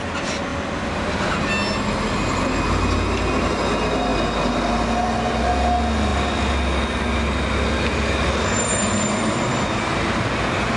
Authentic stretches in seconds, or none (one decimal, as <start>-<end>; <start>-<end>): 0.0-10.8